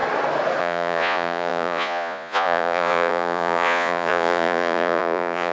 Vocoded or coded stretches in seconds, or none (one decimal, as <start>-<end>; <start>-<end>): 0.6-5.5